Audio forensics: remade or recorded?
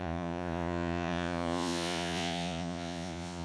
remade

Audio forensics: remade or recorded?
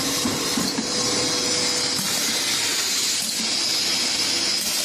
recorded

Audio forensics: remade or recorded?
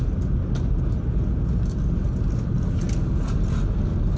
recorded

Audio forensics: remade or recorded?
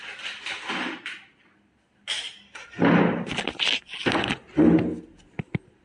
recorded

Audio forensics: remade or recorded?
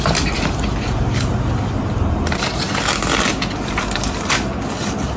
recorded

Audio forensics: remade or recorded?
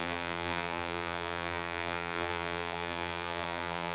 remade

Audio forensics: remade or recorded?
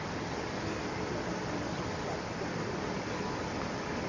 recorded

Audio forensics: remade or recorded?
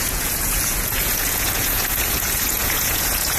remade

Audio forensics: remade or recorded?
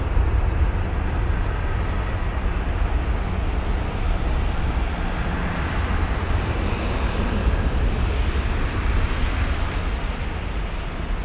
recorded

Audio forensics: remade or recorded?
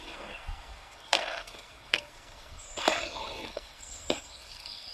remade